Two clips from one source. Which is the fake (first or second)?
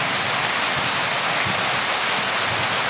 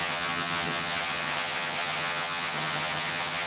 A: second